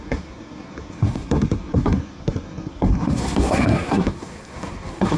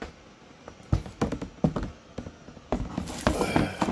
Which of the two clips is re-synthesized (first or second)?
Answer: first